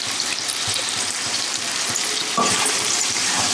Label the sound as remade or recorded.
remade